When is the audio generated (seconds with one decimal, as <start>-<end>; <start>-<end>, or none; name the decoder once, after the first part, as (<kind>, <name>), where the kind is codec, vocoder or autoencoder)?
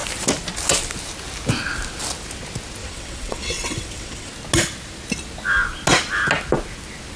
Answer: 2.8-4.3 (vocoder, WaveNeXt)